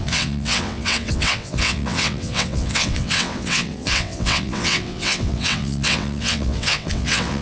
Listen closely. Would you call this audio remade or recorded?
remade